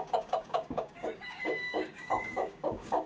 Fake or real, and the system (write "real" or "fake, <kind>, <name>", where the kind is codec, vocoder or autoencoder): fake, codec, DAC